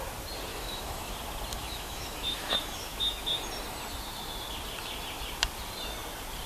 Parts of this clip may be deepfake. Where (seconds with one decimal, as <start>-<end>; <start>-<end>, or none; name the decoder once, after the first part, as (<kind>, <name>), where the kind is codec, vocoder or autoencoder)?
0.5-1.1 (autoencoder, DAC-VAE); 1.5-3.4